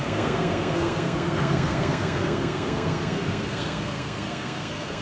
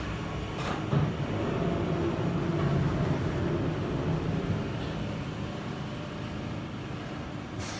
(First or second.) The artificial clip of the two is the first